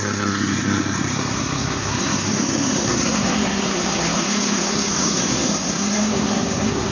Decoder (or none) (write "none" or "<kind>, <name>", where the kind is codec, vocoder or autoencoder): codec, SNAC